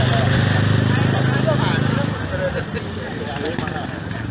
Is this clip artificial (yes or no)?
no